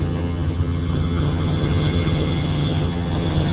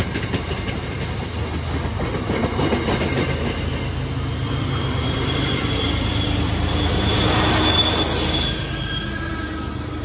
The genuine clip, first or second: second